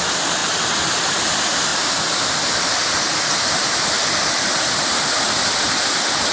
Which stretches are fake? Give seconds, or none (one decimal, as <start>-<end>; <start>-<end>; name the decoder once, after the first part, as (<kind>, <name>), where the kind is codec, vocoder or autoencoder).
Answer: 0.0-0.4 (vocoder, BigVGAN v2); 1.1-6.3